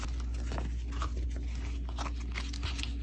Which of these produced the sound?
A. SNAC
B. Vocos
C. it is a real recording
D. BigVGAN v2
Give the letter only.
C